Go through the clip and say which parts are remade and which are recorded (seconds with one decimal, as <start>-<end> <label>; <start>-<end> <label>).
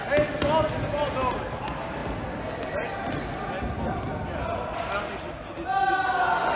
0.0-6.6 recorded